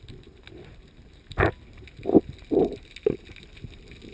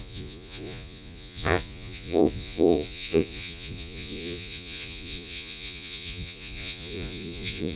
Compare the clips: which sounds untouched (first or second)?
first